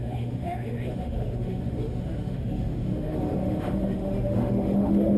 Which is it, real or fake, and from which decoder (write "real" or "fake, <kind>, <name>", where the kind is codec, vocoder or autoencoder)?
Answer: fake, autoencoder, DAC-VAE